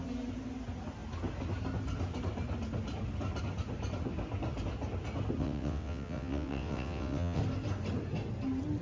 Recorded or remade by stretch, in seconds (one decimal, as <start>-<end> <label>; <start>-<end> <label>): 0.0-5.4 recorded; 5.4-7.4 remade; 7.4-8.8 recorded